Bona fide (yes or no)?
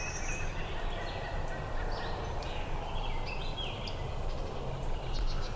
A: yes